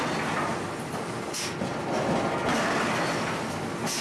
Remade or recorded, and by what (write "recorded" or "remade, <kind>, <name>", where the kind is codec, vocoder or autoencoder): recorded